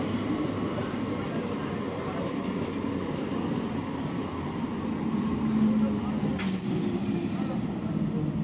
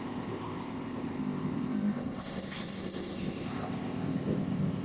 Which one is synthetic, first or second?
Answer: second